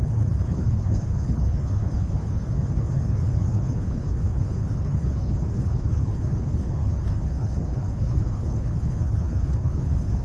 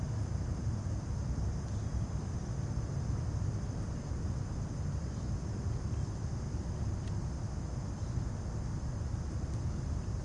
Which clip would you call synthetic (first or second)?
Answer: first